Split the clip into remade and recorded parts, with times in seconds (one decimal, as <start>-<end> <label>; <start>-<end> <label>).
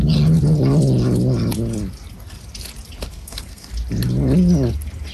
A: 0.0-3.1 recorded; 3.1-3.7 remade; 3.7-5.1 recorded